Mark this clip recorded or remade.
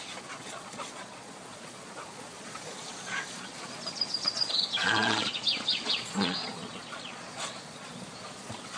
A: remade